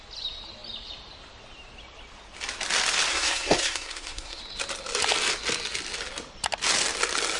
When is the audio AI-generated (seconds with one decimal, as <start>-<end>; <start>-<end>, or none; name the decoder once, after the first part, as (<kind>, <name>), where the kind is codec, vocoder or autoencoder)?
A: 3.1-4.4 (codec, SNAC)